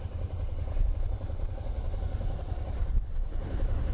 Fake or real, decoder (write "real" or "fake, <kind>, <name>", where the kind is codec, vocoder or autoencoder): real